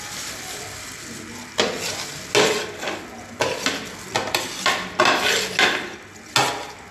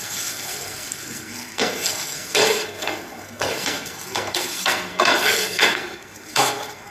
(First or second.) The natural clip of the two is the first